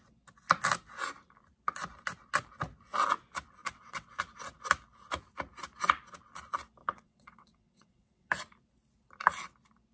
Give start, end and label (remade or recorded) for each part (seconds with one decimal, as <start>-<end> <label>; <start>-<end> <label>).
0.0-3.6 recorded; 3.6-4.2 remade; 4.2-6.8 recorded; 6.8-8.3 remade; 8.3-9.9 recorded